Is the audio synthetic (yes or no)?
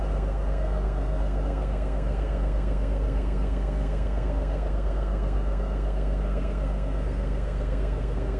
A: yes